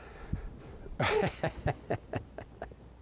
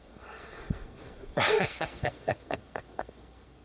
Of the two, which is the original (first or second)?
first